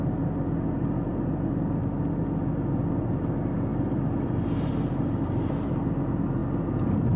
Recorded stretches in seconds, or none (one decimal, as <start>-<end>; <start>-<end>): 0.0-3.7; 5.5-7.2